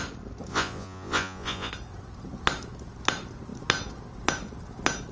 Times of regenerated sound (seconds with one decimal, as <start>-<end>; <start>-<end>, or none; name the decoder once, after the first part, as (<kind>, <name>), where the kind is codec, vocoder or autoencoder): 0.5-1.7 (vocoder, Vocos)